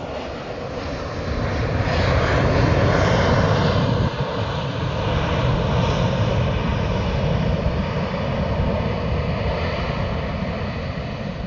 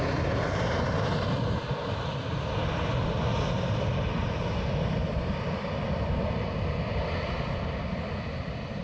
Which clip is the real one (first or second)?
first